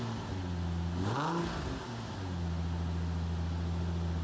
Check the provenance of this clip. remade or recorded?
recorded